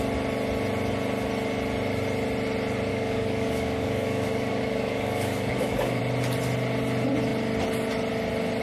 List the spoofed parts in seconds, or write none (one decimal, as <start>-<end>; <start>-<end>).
2.9-6.0